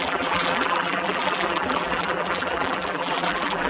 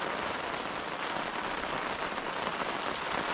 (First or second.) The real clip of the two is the second